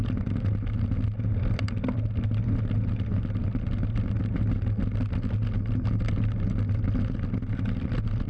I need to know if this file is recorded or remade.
recorded